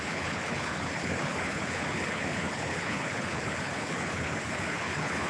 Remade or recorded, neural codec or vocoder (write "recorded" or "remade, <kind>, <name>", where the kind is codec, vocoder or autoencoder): remade, codec, HILCodec